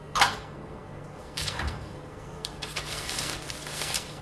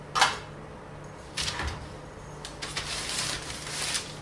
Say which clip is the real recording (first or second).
second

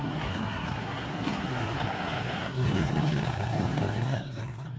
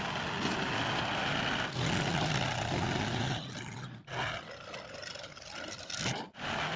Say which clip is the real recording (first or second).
second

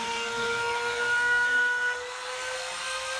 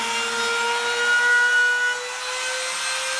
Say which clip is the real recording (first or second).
second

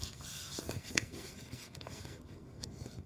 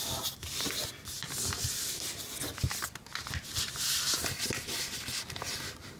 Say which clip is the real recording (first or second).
second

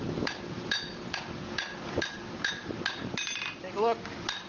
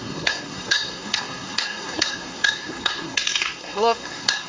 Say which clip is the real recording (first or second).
first